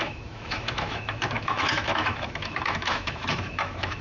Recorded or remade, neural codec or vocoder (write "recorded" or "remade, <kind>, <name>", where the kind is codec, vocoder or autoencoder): remade, autoencoder, DAC-VAE